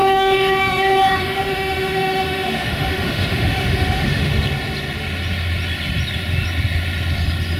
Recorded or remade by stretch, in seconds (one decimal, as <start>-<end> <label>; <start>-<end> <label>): 0.0-4.3 remade; 4.3-7.6 recorded